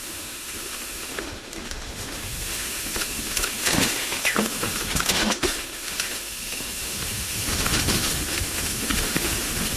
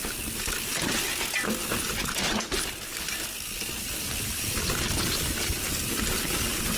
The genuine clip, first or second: second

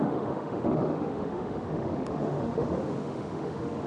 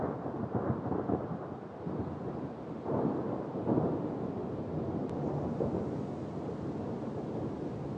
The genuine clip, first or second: second